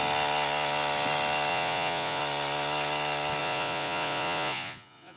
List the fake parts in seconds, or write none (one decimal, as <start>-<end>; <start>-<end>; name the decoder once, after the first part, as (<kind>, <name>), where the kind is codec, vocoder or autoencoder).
1.5-2.2 (vocoder, Vocos); 3.4-5.2